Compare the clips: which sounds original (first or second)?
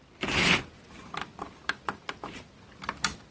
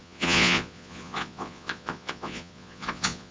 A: first